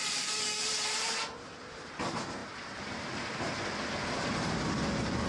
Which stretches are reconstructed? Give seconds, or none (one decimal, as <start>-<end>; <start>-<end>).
0.0-0.7